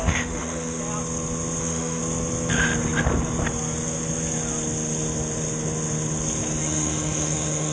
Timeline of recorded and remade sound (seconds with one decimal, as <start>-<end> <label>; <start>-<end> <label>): 0.0-0.8 remade; 0.8-1.6 recorded; 1.6-2.0 remade; 2.0-6.6 recorded; 6.6-7.7 remade